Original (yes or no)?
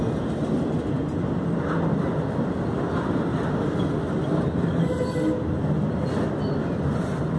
yes